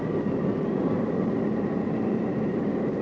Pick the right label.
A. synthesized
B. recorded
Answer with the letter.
B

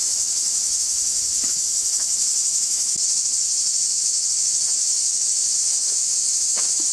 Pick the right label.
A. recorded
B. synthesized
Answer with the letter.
B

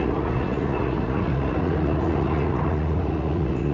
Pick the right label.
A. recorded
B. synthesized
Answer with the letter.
B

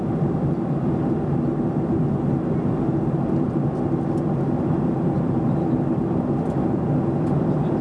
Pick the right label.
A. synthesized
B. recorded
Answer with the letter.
B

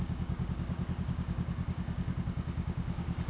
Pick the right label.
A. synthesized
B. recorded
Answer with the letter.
A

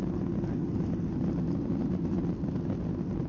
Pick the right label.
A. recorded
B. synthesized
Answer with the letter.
A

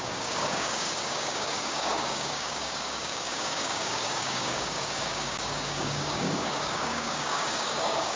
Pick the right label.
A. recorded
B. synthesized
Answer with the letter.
B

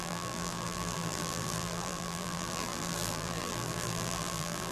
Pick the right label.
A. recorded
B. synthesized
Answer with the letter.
B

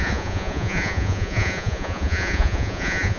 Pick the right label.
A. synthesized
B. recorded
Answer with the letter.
A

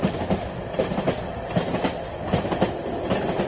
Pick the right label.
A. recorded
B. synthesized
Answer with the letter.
A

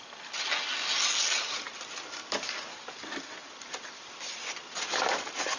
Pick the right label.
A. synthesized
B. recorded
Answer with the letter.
B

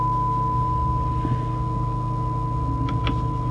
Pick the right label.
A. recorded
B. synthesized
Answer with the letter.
A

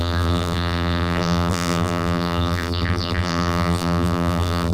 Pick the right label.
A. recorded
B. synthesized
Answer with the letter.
B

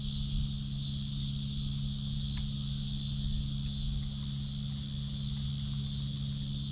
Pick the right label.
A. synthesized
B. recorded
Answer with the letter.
B